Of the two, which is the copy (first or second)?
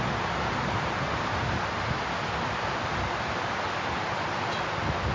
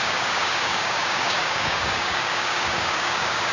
second